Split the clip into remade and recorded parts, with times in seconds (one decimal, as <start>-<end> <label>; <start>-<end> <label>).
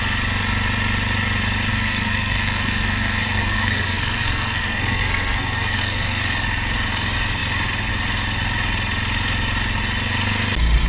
0.0-1.7 recorded; 1.7-6.2 remade; 6.2-10.9 recorded